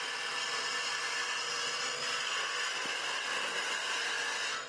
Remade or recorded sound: recorded